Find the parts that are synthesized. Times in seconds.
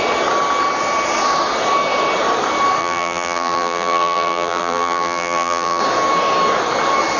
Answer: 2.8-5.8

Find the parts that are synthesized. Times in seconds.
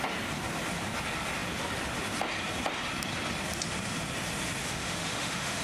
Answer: 4.6-5.6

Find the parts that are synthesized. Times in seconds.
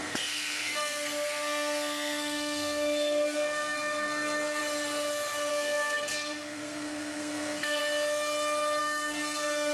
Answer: 0.0-4.6; 5.5-7.8; 8.8-9.7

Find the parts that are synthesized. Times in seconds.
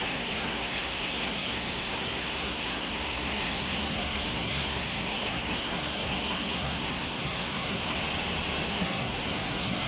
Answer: 0.0-8.0; 8.7-9.9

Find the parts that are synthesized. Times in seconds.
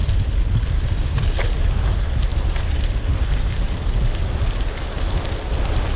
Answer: 2.3-4.4